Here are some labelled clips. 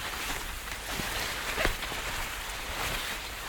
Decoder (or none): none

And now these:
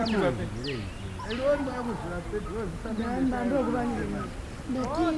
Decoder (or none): none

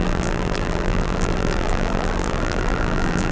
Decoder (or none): vocoder, BigVGAN v2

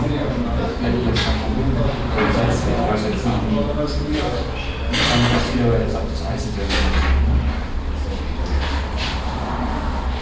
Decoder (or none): none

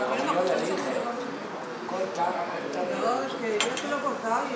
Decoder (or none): none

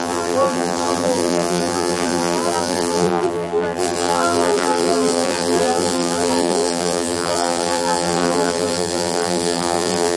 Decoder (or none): vocoder, BigVGAN v2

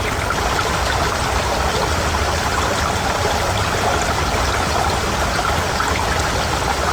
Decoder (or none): none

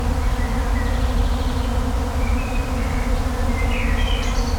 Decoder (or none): none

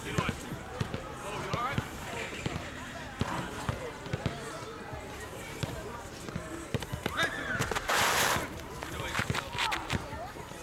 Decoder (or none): vocoder, BigVGAN v2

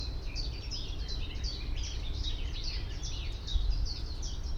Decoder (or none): none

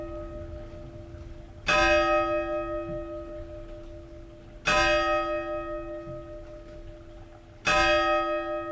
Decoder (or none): none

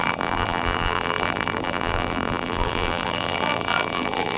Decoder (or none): vocoder, BigVGAN v2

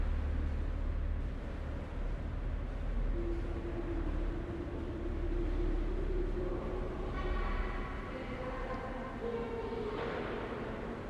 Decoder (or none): none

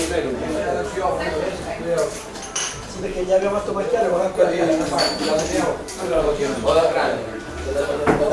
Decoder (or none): vocoder, BigVGAN v2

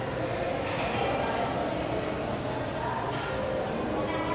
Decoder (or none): none